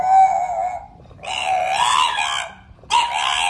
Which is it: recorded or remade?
recorded